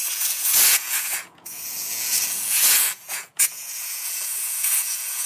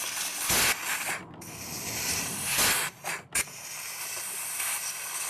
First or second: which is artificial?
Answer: first